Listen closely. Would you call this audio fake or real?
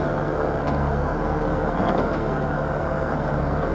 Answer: fake